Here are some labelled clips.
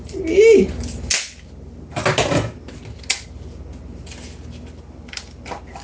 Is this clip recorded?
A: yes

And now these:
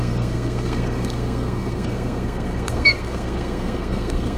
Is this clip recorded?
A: no